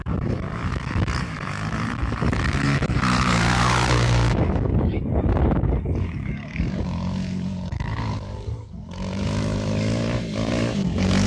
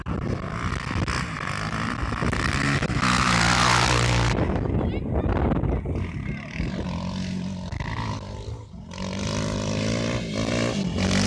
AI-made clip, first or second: first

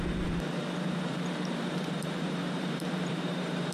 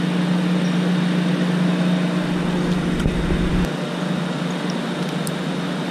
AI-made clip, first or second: first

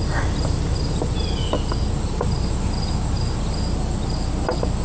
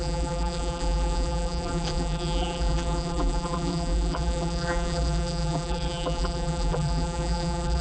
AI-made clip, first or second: second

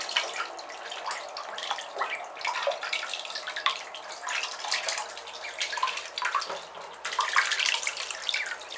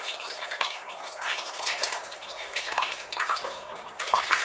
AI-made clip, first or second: second